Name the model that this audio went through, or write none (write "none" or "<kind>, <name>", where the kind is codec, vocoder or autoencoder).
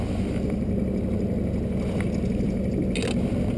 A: none